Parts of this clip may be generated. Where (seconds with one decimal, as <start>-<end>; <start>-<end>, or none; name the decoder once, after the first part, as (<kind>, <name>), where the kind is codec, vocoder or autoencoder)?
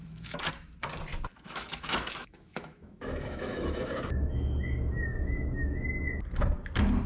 0.0-0.5 (autoencoder, DAC-VAE); 1.3-3.9; 5.1-5.6